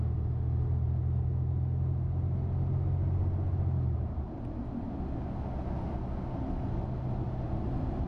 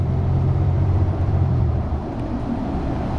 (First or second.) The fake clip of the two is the second